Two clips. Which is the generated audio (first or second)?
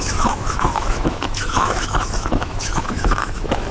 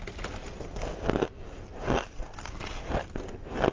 first